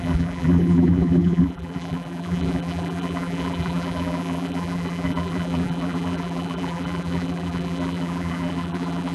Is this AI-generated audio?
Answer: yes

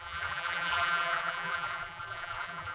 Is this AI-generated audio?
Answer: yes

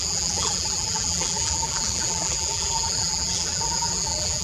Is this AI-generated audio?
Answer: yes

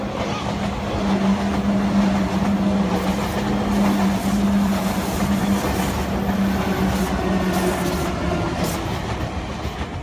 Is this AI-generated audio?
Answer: no